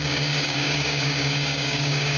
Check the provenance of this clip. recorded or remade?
remade